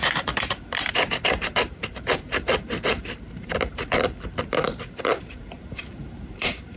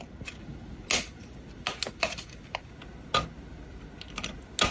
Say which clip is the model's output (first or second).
first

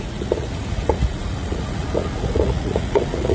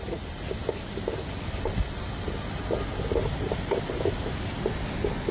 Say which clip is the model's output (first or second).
first